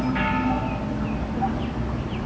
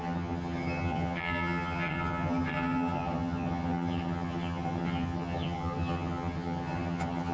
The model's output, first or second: second